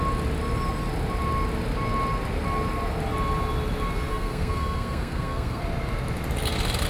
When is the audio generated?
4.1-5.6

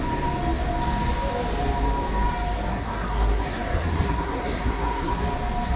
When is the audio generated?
2.7-5.1